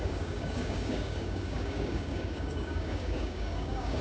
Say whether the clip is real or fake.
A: fake